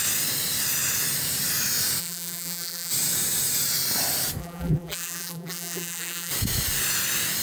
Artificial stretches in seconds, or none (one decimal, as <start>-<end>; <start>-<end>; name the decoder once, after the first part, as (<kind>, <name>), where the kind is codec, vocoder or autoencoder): 2.0-2.9 (vocoder, BigVGAN v2); 4.4-6.3